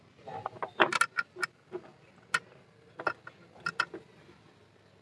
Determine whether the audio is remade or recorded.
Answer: recorded